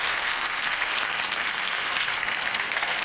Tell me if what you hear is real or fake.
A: fake